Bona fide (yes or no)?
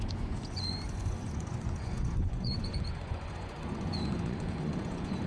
no